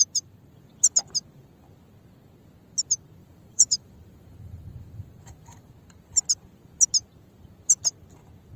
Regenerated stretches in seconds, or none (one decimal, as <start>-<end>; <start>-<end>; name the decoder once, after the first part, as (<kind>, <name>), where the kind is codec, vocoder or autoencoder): 3.2-5.7 (vocoder, BigVGAN v2)